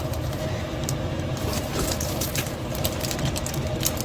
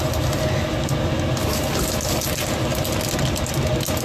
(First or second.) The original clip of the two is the second